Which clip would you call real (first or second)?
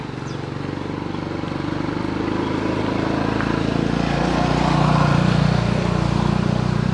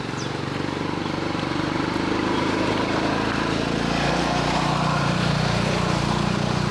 first